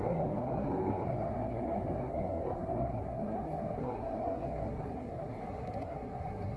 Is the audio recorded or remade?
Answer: remade